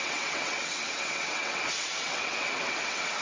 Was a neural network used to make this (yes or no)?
yes